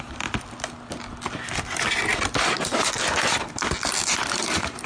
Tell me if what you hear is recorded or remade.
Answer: recorded